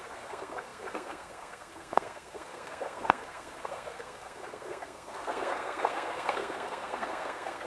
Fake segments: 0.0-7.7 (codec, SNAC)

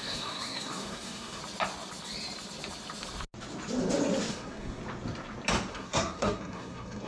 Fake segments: 0.0-1.4 (codec, SNAC); 4.3-4.8; 5.7-7.1

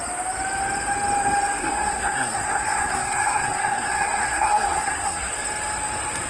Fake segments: 1.6-5.3 (codec, SNAC)

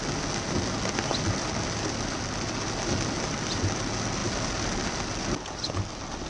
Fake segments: none

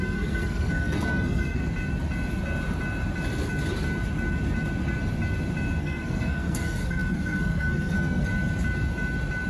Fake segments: 0.0-1.6 (codec, SNAC); 5.8-8.3

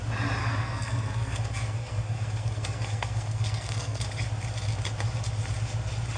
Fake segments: 0.4-4.1 (codec, SNAC)